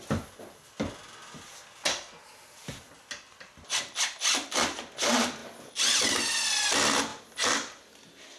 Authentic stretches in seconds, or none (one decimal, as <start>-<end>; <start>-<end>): 0.0-8.4